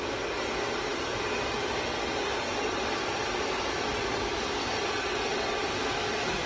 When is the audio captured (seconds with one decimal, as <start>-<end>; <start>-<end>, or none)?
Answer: 0.0-6.5